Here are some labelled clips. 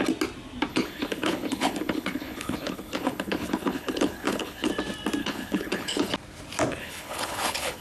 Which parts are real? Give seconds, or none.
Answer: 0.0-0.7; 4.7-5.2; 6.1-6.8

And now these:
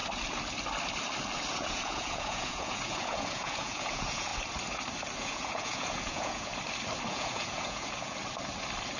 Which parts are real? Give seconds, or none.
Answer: 0.0-1.5; 4.3-5.2; 6.5-7.1; 8.2-9.0

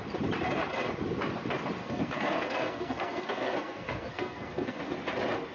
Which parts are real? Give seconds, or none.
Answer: 0.0-1.8; 4.8-5.5